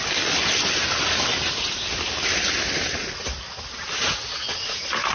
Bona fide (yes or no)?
yes